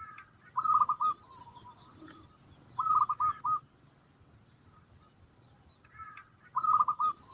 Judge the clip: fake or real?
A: real